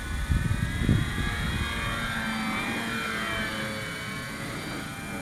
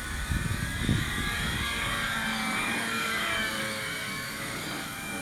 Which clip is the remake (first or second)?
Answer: second